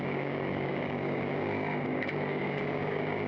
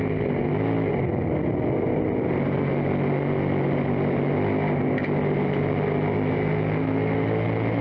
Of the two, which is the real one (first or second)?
second